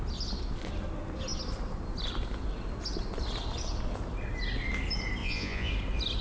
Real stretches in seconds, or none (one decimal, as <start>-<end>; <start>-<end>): 0.0-5.2; 5.7-6.2

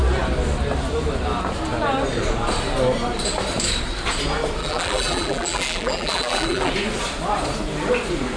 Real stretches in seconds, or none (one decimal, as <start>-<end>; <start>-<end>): 0.0-4.6; 6.7-8.4

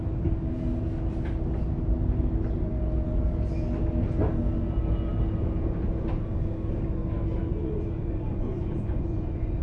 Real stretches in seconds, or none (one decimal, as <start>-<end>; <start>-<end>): 0.0-7.5